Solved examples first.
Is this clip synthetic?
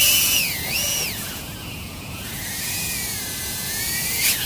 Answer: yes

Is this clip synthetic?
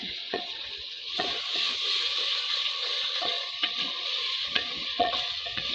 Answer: yes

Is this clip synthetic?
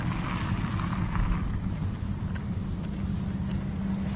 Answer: no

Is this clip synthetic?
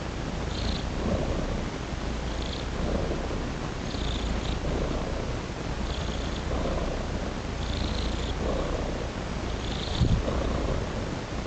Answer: no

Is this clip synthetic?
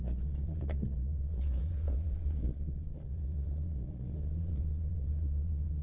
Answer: yes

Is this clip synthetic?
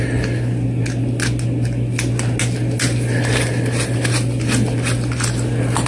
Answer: no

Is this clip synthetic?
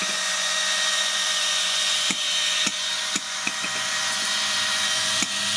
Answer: yes